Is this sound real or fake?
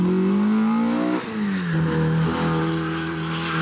real